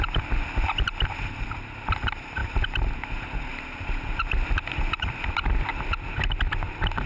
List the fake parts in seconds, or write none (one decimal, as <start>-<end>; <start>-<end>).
none